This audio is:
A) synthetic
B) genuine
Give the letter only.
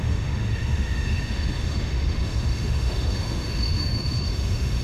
A